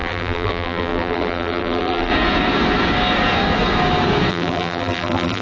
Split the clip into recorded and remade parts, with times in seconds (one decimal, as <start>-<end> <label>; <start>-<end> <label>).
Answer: 0.0-2.1 remade; 2.1-4.3 recorded; 4.3-5.4 remade